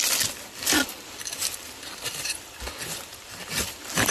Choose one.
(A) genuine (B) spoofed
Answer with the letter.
B